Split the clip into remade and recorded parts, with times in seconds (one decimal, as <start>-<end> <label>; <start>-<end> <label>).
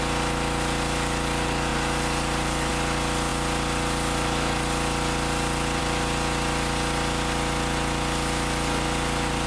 0.0-1.7 recorded; 1.7-2.7 remade; 2.7-9.5 recorded